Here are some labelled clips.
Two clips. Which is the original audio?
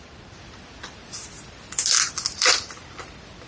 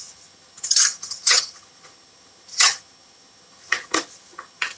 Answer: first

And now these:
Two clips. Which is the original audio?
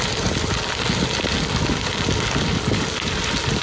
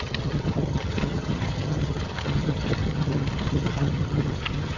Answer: first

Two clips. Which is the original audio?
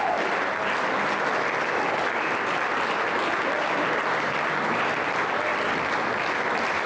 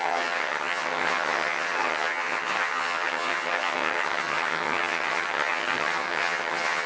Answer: first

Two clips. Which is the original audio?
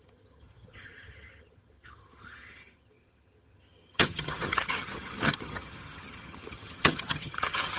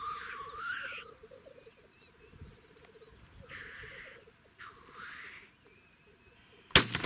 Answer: second